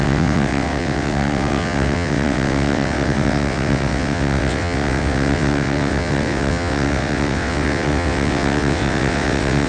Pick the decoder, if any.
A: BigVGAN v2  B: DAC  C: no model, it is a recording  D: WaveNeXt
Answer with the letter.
D